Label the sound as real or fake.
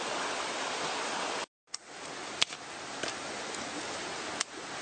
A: real